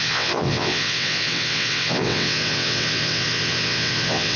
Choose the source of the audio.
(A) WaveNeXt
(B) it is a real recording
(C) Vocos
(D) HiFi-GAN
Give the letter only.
A